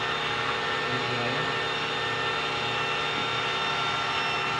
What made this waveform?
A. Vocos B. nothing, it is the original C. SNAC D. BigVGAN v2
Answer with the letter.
B